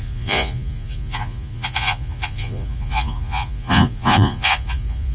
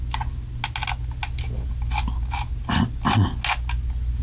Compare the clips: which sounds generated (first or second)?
first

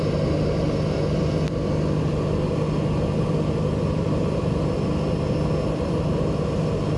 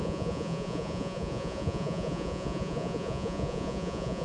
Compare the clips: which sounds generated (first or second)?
second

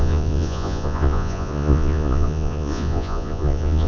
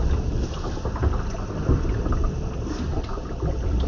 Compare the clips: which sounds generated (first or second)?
first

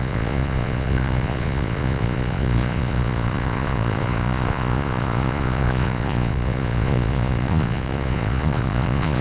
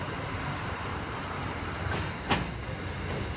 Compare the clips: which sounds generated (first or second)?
first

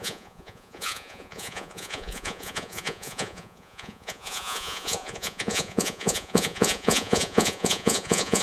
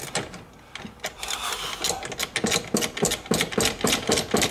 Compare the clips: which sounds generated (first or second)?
first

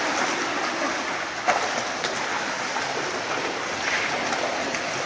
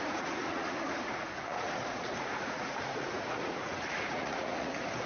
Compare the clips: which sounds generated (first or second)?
second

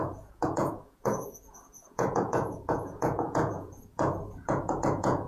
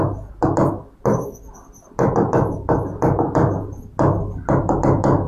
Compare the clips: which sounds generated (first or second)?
first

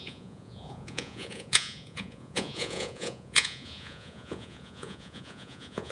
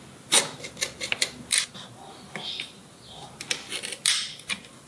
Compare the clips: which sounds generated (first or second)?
first